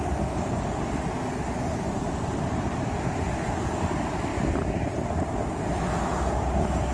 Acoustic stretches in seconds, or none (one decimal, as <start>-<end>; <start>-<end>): 0.0-6.9